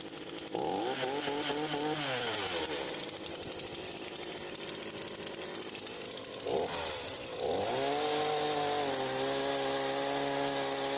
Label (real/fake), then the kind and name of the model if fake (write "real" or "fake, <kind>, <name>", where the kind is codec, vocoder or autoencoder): real